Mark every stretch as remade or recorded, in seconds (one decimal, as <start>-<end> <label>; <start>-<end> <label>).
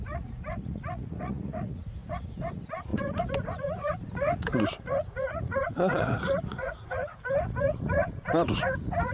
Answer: 0.0-9.1 remade